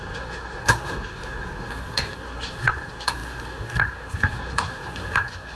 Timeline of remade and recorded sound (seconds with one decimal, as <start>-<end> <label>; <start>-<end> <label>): 0.0-5.6 remade